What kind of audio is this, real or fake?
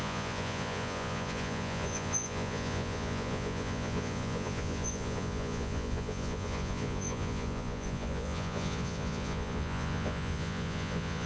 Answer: fake